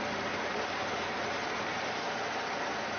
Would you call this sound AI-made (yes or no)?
no